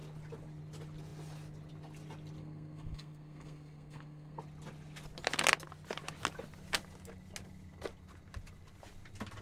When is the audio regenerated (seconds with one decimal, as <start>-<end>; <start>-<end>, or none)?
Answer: 2.4-4.4